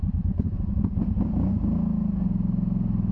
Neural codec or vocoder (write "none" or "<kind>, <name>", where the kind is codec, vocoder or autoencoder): none